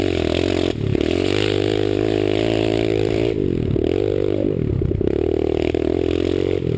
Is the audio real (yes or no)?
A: yes